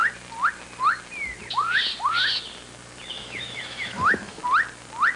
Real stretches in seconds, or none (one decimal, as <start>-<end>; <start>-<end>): 0.0-3.1; 4.4-5.2